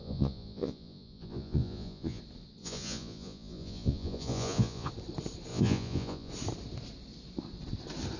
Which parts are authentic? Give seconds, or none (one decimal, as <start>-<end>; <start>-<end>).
2.2-2.6; 4.9-5.5; 6.3-8.2

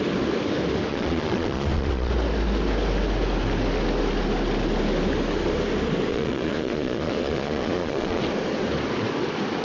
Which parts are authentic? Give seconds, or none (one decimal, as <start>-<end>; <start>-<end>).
0.0-0.9; 2.1-6.1; 8.2-9.6